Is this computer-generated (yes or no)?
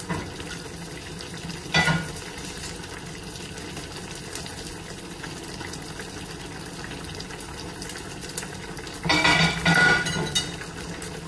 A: no